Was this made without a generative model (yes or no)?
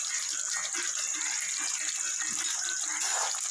yes